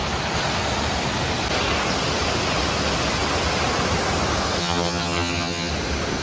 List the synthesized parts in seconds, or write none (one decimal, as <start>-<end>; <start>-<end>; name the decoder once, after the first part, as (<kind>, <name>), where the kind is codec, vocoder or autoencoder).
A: 4.6-5.7 (vocoder, HiFi-GAN)